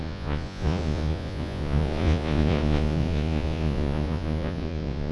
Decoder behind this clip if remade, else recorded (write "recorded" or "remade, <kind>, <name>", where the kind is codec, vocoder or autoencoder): remade, vocoder, Vocos